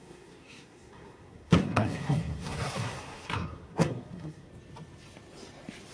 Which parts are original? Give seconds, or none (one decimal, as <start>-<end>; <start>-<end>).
4.5-5.9